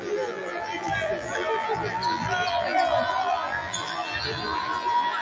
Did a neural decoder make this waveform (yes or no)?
yes